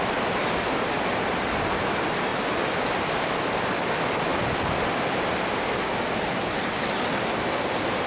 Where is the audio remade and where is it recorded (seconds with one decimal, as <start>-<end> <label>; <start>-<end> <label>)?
0.0-8.1 recorded